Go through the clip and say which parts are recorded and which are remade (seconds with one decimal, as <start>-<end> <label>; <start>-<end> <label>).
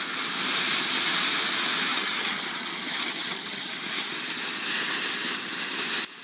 0.0-1.9 recorded; 1.9-3.7 remade; 3.7-6.2 recorded